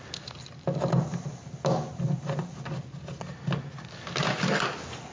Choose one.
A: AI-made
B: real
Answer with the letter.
B